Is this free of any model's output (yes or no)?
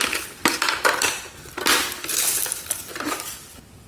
yes